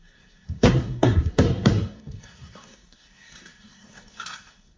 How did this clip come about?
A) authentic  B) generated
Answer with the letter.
B